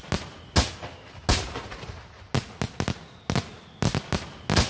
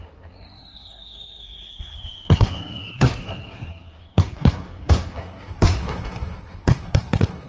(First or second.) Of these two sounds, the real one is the first